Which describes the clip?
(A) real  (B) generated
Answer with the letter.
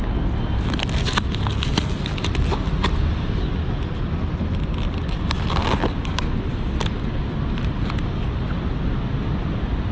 A